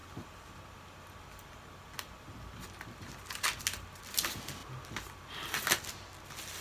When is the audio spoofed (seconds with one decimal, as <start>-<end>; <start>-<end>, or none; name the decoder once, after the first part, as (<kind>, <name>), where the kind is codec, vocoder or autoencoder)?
none